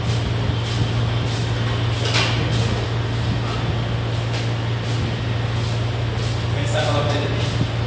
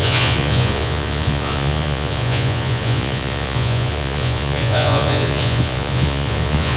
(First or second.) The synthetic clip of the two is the second